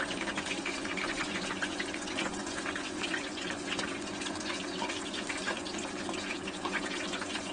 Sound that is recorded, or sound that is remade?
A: remade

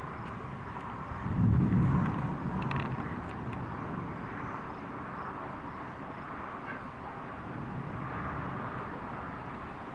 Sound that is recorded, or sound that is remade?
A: recorded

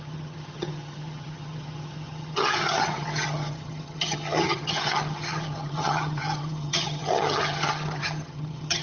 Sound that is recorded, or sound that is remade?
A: remade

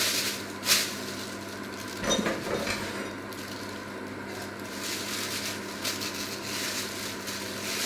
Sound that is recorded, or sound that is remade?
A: recorded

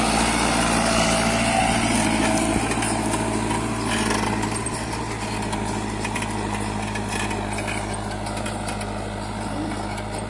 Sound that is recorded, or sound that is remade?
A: recorded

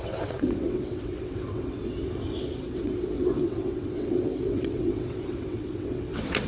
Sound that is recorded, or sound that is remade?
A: remade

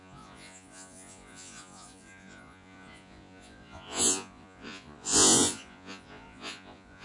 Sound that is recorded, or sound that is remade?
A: remade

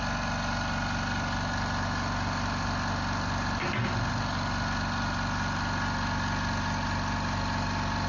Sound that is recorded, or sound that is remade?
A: recorded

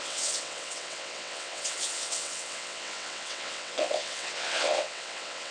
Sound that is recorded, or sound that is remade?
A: remade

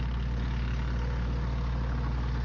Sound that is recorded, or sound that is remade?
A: recorded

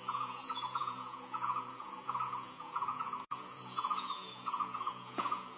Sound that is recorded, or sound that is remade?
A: remade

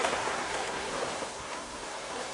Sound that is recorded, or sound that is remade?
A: remade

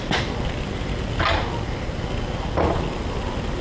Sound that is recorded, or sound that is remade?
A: recorded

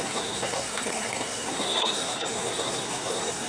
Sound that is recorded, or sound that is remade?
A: remade